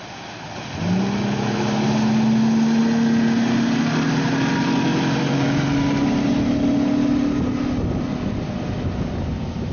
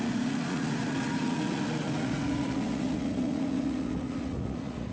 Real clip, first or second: first